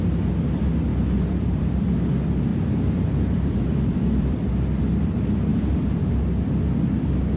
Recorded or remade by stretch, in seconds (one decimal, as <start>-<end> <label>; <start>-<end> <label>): 0.0-0.9 recorded; 0.9-1.8 remade; 1.8-2.5 recorded; 2.5-4.5 remade; 4.5-5.5 recorded; 5.5-6.1 remade; 6.1-7.4 recorded